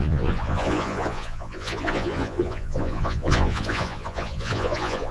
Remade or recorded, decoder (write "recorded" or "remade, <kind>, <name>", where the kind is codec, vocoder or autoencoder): remade, vocoder, Vocos